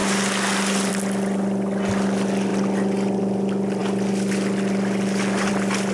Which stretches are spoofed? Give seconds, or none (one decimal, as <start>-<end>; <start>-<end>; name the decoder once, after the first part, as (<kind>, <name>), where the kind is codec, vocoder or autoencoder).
none